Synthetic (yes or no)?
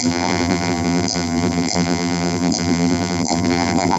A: yes